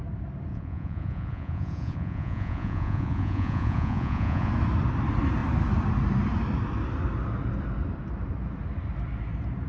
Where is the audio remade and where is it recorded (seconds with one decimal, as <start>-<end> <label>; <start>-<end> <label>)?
0.0-0.5 recorded; 0.5-4.5 remade; 4.5-9.7 recorded